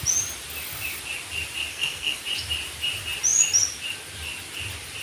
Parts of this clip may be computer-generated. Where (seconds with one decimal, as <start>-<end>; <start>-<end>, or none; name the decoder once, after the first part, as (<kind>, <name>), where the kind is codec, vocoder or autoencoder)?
1.7-2.2 (codec, SNAC)